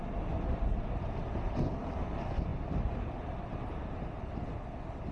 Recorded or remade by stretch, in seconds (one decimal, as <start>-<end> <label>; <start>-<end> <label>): 0.0-5.1 recorded